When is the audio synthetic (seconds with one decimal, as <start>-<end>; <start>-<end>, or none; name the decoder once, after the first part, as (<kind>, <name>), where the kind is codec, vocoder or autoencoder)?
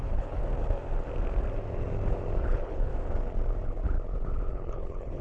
0.0-0.4 (codec, HILCodec); 2.4-2.9; 4.5-5.2